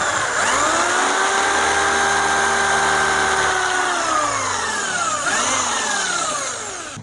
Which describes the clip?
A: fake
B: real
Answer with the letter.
B